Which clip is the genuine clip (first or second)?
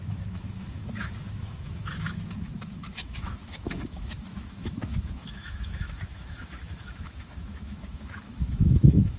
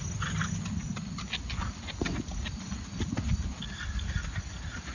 second